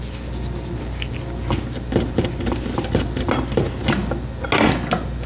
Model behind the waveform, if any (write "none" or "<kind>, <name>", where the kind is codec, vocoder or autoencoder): none